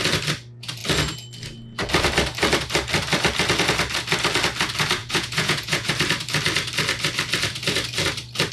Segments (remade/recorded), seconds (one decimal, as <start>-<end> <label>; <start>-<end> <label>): 0.0-5.0 recorded; 5.0-5.9 remade; 5.9-8.5 recorded